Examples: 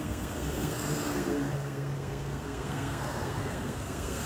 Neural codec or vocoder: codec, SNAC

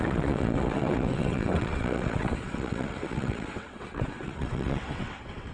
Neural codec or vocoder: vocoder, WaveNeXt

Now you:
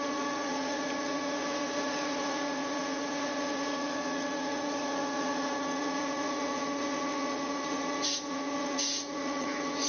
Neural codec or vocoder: vocoder, Vocos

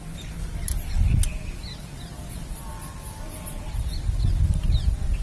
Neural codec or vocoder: none